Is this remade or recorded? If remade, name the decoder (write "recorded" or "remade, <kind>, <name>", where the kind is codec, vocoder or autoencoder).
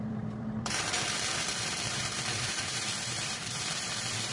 remade, vocoder, BigVGAN v2